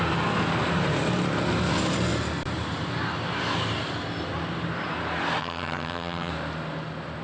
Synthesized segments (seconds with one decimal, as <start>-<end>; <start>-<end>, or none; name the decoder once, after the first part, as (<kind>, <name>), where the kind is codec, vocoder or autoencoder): 5.4-6.3 (vocoder, HiFi-GAN)